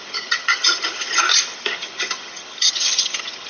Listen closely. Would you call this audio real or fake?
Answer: fake